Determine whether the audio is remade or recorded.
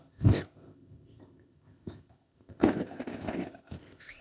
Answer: remade